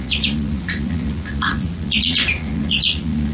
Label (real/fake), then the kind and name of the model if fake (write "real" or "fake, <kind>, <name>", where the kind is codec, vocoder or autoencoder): fake, vocoder, Vocos